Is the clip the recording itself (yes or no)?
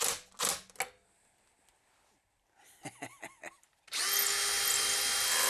yes